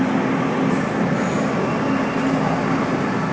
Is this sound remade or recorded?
recorded